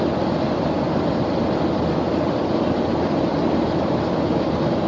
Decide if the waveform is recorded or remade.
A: remade